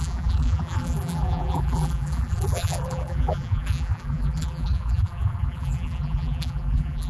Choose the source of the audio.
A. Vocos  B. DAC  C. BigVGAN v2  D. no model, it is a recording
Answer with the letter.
C